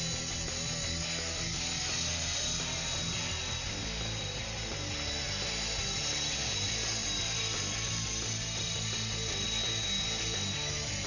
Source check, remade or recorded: recorded